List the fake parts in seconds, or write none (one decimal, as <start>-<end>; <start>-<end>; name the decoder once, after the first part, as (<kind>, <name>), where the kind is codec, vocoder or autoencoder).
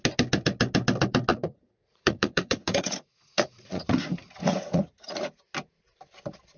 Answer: 1.3-5.3 (vocoder, Vocos)